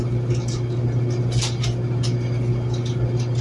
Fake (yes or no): no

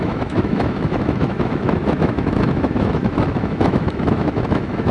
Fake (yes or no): yes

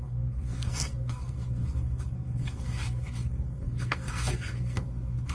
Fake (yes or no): yes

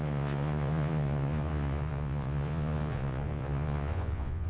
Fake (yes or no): yes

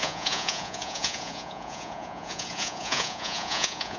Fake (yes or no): yes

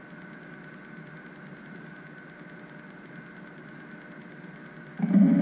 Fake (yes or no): no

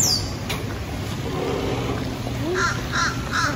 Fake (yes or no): no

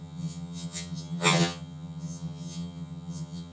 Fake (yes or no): yes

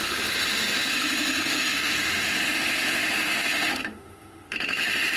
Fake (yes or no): yes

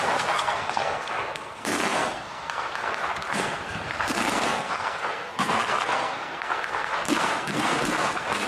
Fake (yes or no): yes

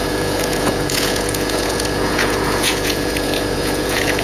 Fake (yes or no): yes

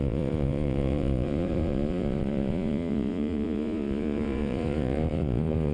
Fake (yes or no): yes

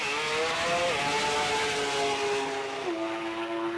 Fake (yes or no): no